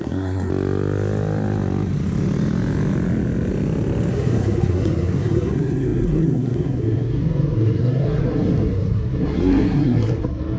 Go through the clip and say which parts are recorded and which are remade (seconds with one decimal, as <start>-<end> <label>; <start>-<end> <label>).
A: 0.0-0.5 remade; 0.5-4.1 recorded; 4.1-10.6 remade